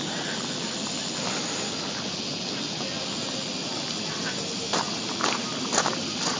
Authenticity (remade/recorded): recorded